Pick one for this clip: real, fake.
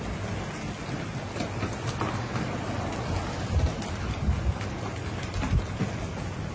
real